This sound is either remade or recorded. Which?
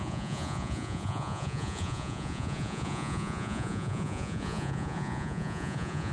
remade